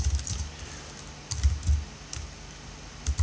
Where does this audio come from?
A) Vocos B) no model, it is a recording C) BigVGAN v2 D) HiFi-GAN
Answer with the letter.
B